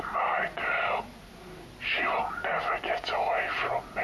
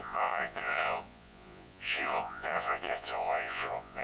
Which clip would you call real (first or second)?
first